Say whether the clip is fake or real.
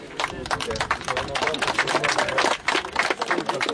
real